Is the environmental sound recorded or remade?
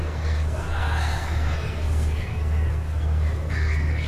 remade